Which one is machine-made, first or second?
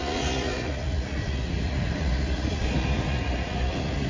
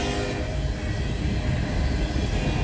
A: first